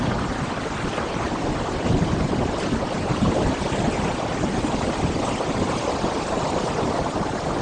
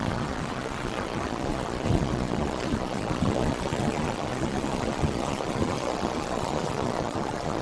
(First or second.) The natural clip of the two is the first